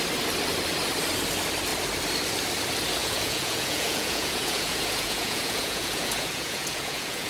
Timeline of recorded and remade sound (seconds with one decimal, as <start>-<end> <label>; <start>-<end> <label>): 0.0-3.0 recorded; 3.0-7.3 remade